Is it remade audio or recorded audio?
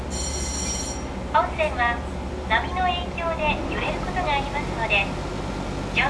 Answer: recorded